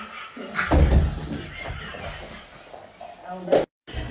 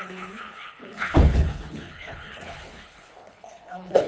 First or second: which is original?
first